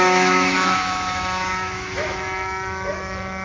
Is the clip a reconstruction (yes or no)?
yes